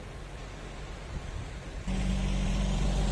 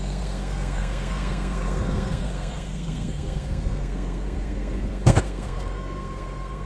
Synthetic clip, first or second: second